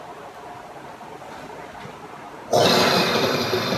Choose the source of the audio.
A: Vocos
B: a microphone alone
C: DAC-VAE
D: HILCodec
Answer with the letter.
B